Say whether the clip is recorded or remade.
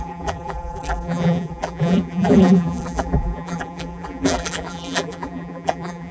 remade